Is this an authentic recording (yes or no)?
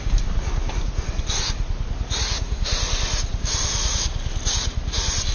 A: yes